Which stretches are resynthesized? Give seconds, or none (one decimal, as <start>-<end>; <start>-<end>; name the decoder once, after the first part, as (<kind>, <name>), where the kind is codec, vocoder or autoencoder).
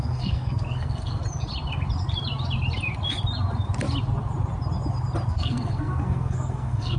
0.0-1.2 (codec, SNAC); 5.3-7.0